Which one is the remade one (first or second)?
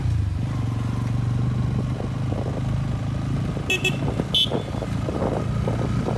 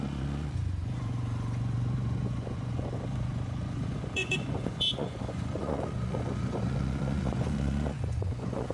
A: second